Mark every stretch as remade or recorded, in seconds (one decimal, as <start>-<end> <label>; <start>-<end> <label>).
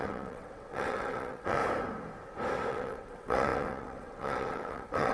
0.0-1.6 remade; 1.6-2.7 recorded; 2.7-5.1 remade